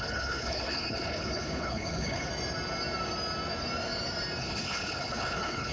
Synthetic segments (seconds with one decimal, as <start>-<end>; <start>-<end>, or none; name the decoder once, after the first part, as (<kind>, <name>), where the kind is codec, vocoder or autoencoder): 0.0-2.3 (codec, HILCodec); 4.4-5.7